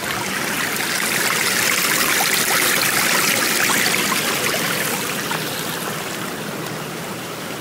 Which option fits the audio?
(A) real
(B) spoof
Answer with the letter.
A